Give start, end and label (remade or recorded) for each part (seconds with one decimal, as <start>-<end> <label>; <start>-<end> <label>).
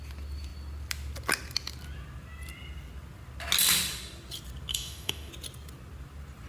0.0-4.7 recorded; 4.7-5.3 remade; 5.3-6.5 recorded